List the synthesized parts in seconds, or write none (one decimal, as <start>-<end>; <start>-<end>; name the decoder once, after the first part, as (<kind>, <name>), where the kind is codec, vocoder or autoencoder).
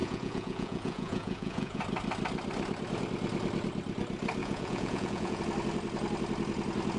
0.0-1.8 (vocoder, Vocos); 4.4-5.4